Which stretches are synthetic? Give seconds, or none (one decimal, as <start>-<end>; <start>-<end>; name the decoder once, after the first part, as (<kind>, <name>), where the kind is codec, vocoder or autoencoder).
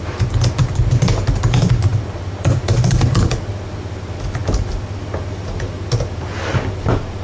1.9-3.5 (vocoder, BigVGAN v2)